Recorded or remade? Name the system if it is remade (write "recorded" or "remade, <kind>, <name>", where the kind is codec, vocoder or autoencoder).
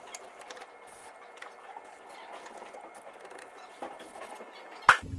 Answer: recorded